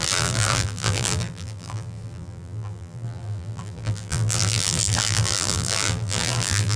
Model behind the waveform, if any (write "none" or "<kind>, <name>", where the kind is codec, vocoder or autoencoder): vocoder, BigVGAN v2